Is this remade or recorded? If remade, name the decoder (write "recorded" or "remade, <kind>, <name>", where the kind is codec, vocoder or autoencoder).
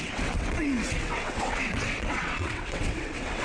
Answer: remade, vocoder, WaveNeXt